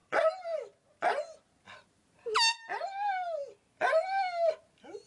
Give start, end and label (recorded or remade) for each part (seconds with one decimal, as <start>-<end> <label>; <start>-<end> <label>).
0.0-5.1 recorded